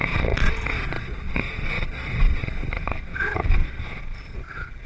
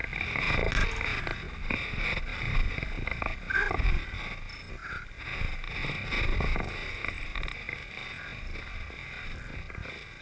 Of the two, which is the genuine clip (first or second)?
second